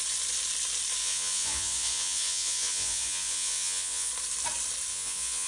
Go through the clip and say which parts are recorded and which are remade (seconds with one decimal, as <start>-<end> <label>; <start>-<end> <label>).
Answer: 0.0-1.0 recorded; 1.0-4.1 remade; 4.1-4.9 recorded; 4.9-5.5 remade